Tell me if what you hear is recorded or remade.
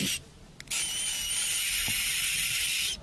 recorded